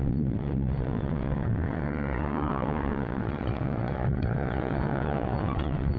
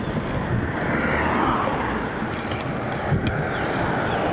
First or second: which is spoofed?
first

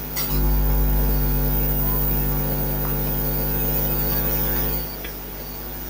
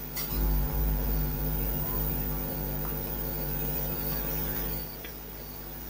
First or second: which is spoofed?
second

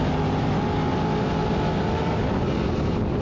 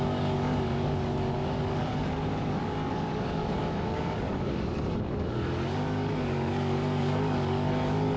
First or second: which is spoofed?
second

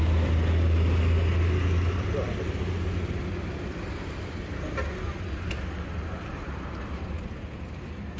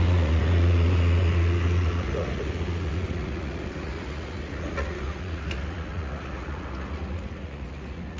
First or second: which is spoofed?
second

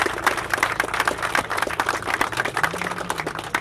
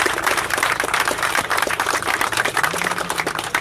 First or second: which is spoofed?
second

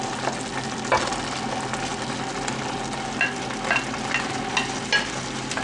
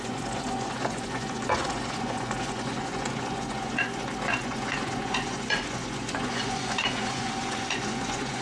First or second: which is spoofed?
second